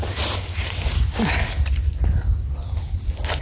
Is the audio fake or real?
real